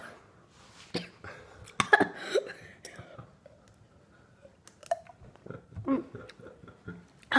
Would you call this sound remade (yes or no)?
no